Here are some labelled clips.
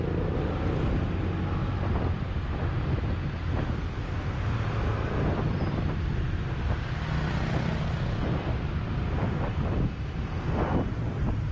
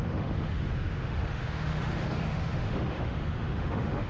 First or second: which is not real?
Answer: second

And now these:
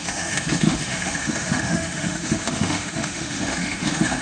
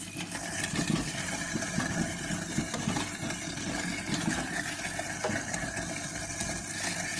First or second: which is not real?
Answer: first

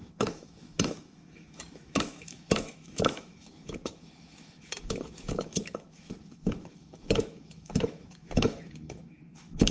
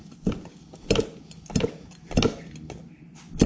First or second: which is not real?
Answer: first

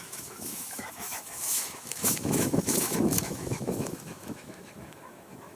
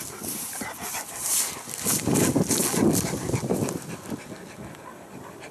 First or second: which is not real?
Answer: first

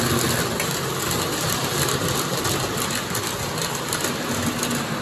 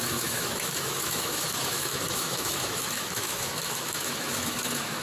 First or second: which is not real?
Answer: second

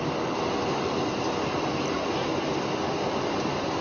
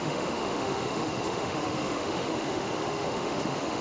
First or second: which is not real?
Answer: second